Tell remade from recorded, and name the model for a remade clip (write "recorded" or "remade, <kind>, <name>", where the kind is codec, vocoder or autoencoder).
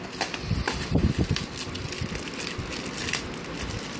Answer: recorded